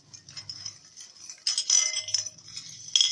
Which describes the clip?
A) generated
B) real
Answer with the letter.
B